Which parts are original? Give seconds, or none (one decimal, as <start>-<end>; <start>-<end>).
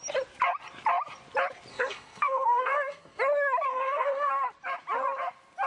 0.0-1.7; 3.2-3.7; 4.3-5.7